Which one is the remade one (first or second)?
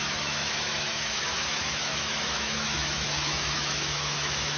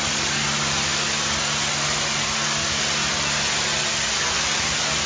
first